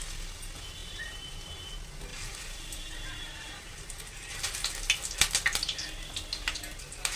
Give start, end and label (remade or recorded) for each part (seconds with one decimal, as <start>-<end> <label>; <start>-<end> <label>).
0.0-0.8 recorded; 0.8-1.7 remade; 1.7-2.1 recorded; 2.1-4.4 remade; 4.4-7.2 recorded